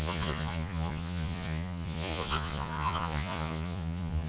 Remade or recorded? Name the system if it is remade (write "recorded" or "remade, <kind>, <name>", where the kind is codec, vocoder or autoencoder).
remade, vocoder, Vocos